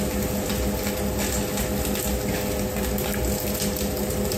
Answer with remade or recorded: recorded